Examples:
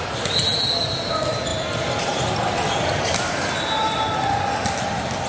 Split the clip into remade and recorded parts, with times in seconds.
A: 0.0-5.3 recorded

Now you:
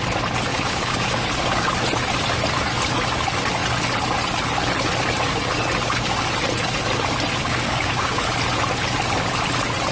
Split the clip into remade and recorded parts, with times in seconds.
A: 0.0-0.5 recorded; 0.5-1.3 remade; 1.3-7.4 recorded; 7.4-8.2 remade; 8.2-9.9 recorded

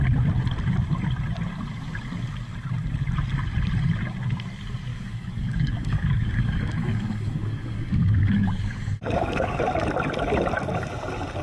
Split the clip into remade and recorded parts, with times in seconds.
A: 0.0-4.9 recorded; 4.9-9.6 remade; 9.6-11.4 recorded

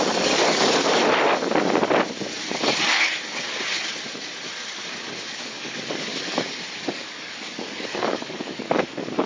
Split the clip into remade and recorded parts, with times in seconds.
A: 0.0-0.4 remade; 0.4-5.3 recorded; 5.3-6.1 remade; 6.1-6.8 recorded; 6.8-9.3 remade

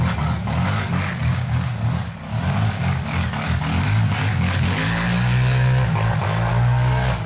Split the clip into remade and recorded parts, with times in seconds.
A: 0.0-4.8 remade; 4.8-6.5 recorded; 6.5-7.3 remade

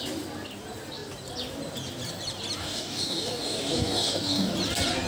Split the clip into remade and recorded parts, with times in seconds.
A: 0.0-2.6 recorded; 2.6-4.5 remade; 4.5-5.1 recorded

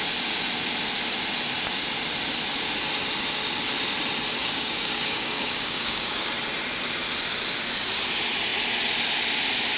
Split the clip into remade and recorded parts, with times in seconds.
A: 0.0-4.4 recorded; 4.4-6.3 remade; 6.3-9.8 recorded